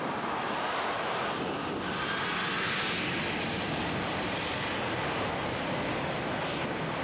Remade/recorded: recorded